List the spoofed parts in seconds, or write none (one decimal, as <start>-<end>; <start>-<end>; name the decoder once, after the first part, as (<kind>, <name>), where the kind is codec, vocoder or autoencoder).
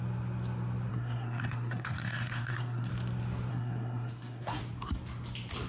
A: 0.9-2.9 (codec, SNAC); 3.5-4.6